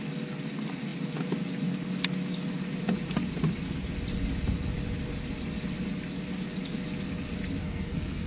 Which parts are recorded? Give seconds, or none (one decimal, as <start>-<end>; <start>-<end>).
0.0-7.6

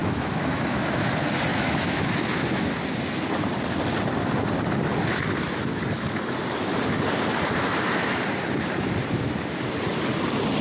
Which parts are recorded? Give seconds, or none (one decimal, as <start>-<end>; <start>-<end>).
1.1-1.5; 2.7-10.6

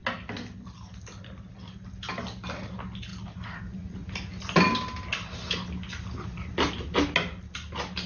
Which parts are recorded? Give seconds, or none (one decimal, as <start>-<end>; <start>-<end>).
0.0-8.1

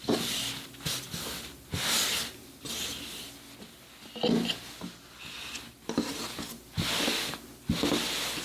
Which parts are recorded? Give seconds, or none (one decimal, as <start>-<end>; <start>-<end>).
0.0-8.4

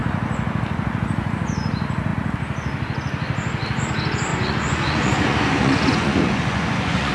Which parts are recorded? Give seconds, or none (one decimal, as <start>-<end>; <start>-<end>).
0.0-4.3

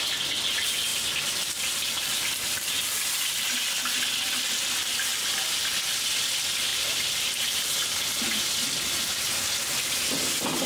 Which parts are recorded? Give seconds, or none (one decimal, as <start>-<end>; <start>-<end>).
0.0-0.9; 3.7-6.7; 7.4-10.7

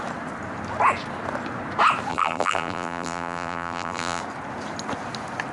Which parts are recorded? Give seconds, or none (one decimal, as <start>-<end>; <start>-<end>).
0.0-2.1; 4.2-5.5

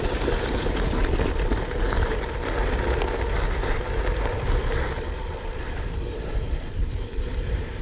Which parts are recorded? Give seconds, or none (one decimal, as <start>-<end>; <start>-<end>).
1.0-5.7